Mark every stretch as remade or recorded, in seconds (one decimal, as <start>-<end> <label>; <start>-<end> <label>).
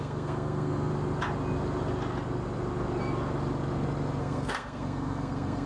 0.0-0.9 remade; 0.9-4.2 recorded; 4.2-5.7 remade